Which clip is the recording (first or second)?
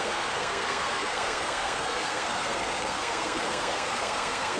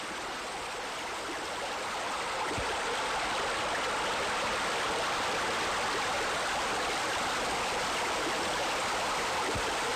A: second